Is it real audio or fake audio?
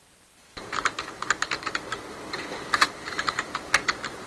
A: fake